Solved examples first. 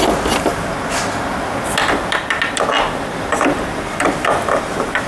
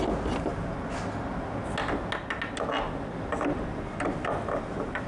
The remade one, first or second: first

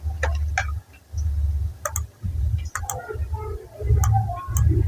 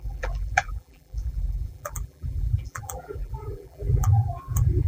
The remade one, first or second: second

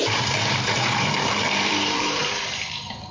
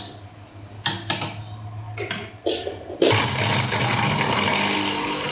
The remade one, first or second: first